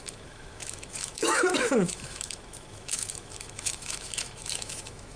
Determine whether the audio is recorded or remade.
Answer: remade